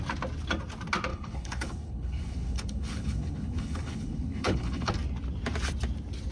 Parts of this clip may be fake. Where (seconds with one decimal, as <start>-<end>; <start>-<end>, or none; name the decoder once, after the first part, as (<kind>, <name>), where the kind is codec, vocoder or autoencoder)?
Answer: 1.1-4.9 (codec, HILCodec)